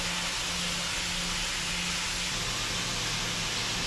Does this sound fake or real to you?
real